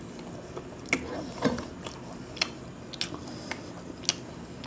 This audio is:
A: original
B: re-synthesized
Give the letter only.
A